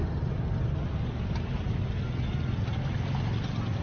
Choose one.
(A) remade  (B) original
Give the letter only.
B